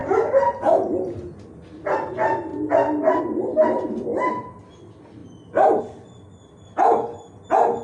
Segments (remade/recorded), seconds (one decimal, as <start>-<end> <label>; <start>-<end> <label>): 0.0-7.8 recorded